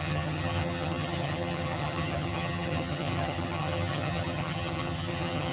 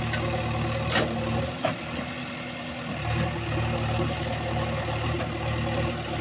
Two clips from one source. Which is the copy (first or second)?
first